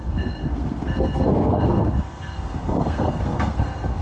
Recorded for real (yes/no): no